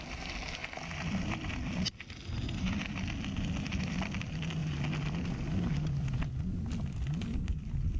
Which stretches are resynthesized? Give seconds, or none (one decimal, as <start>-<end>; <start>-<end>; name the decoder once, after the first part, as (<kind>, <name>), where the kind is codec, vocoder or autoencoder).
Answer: none